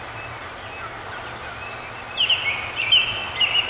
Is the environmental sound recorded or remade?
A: recorded